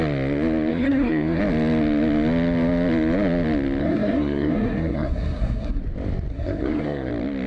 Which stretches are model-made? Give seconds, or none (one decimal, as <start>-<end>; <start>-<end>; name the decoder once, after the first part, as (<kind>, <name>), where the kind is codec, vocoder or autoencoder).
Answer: 0.7-1.4 (codec, SNAC); 3.8-5.8; 6.3-7.1